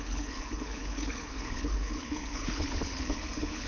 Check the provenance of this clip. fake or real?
fake